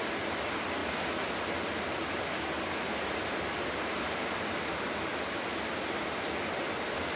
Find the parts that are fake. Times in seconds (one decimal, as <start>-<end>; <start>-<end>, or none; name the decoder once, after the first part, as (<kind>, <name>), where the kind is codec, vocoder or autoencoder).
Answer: none